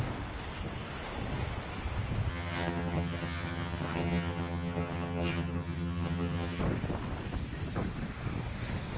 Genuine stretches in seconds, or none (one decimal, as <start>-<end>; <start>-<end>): 0.0-2.3; 6.6-9.0